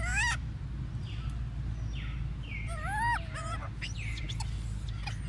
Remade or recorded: recorded